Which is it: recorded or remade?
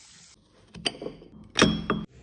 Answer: recorded